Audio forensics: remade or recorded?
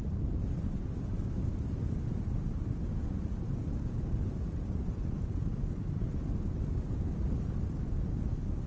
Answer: recorded